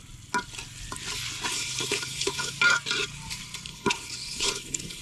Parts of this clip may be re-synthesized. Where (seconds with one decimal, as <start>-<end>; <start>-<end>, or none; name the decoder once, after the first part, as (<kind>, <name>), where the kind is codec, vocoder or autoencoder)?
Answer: 1.5-2.5 (codec, HILCodec); 3.7-5.0